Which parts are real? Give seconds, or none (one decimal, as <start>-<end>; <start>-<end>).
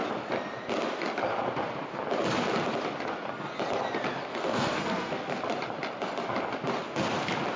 0.0-4.3; 5.4-7.6